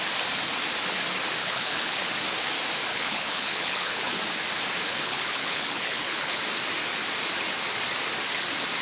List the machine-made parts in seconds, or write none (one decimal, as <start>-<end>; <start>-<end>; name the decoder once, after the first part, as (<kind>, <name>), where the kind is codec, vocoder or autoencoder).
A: 1.4-2.1 (codec, HILCodec); 2.9-4.1; 4.9-6.4